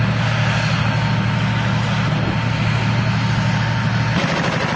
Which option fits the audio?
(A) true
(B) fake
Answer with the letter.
A